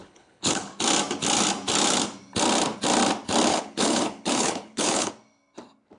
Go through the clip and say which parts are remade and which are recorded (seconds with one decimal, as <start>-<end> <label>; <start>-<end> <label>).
0.0-0.7 remade; 0.7-3.5 recorded; 3.5-5.1 remade; 5.1-6.0 recorded